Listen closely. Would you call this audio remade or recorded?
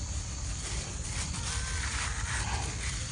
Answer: recorded